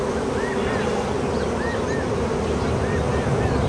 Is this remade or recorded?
recorded